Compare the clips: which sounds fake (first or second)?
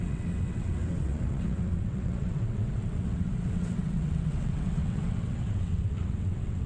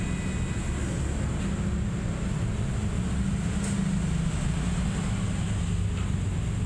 first